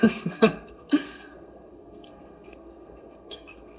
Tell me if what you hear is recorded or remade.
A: remade